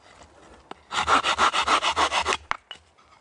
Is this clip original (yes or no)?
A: yes